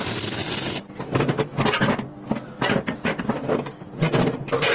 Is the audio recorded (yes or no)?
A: yes